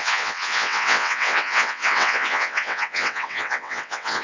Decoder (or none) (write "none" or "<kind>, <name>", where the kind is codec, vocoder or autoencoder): vocoder, WaveNeXt